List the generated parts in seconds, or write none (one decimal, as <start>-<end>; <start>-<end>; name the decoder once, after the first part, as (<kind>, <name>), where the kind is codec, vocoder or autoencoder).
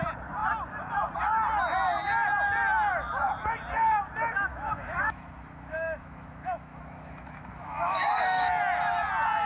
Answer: 4.5-8.5 (autoencoder, DAC-VAE)